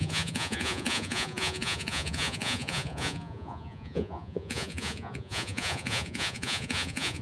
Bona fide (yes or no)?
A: no